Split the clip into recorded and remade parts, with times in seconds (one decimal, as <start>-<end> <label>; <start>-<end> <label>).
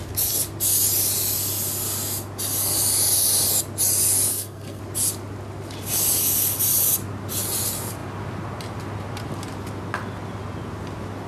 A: 0.0-4.3 recorded; 4.3-4.8 remade; 4.8-11.3 recorded